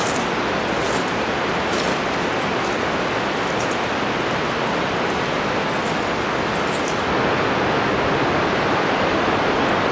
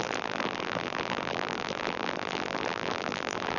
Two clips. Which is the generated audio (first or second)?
second